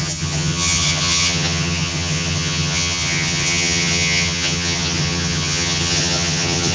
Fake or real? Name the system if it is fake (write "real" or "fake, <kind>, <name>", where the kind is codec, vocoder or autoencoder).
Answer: fake, vocoder, HiFi-GAN